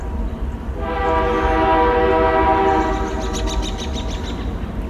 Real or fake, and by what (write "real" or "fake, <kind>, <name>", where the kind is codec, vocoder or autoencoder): real